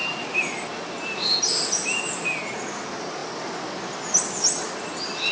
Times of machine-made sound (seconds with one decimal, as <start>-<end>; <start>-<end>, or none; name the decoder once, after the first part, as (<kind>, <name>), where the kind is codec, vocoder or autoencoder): none